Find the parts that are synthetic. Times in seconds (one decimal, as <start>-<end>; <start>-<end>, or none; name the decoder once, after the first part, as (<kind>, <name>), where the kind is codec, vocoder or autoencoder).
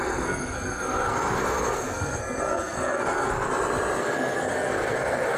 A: 0.0-3.5 (codec, SNAC); 4.0-5.4